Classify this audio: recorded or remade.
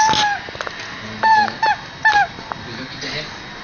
recorded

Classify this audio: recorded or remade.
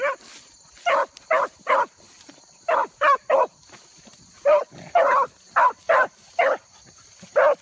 recorded